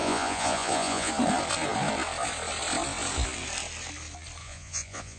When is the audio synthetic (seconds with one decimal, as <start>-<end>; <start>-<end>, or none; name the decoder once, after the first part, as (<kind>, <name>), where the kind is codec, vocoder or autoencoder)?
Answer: 0.0-1.1 (vocoder, Vocos); 4.4-5.2